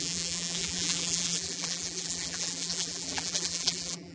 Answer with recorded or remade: remade